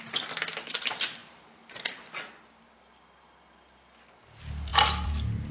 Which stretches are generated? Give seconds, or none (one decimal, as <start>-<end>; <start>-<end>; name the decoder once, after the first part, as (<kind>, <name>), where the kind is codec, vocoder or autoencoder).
4.7-5.5 (vocoder, BigVGAN v2)